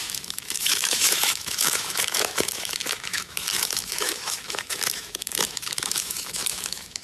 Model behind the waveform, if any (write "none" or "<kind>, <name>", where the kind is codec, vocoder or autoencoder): autoencoder, DAC-VAE